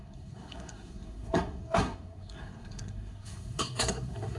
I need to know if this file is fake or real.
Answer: fake